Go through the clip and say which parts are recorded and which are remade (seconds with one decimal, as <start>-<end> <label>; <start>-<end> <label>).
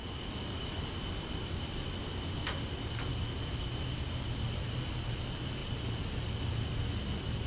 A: 0.0-7.5 recorded